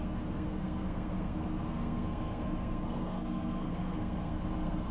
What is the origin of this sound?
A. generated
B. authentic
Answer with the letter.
A